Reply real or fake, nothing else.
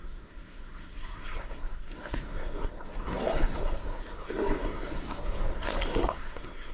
fake